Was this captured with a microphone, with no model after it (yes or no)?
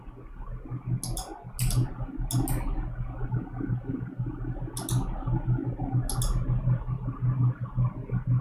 yes